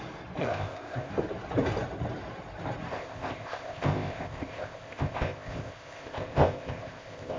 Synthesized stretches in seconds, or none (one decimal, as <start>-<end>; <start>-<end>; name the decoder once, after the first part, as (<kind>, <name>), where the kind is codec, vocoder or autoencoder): 0.4-1.1 (codec, ZipCodec); 2.9-7.4